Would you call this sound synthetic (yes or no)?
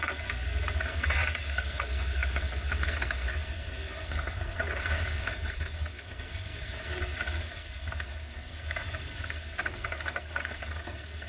yes